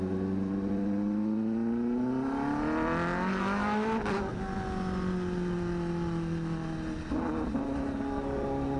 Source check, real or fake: real